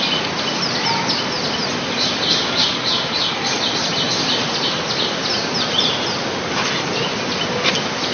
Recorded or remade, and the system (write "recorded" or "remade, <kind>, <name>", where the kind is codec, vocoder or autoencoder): recorded